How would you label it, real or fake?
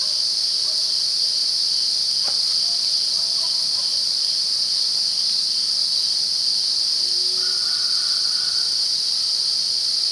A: real